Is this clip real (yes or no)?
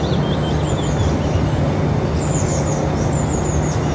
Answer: yes